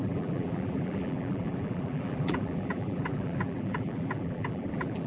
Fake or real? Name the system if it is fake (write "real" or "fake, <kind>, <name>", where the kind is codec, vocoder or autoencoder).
fake, vocoder, BigVGAN v2